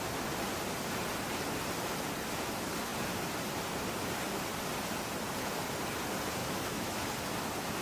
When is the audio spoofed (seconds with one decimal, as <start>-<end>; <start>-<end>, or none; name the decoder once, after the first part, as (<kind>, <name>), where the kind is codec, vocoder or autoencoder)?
6.4-7.1 (autoencoder, DAC-VAE)